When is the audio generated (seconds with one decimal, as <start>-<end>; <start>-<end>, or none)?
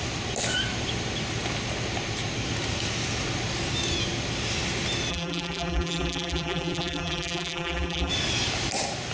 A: 5.1-8.1